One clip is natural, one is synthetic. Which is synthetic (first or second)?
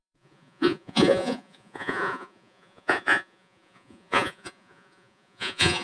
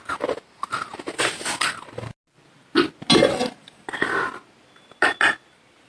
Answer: first